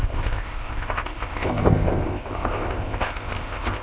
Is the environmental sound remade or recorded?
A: remade